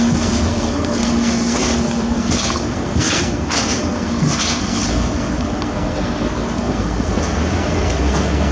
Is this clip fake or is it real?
fake